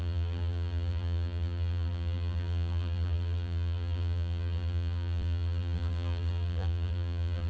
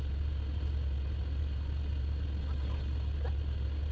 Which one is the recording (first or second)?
second